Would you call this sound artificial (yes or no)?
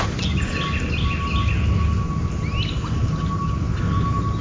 no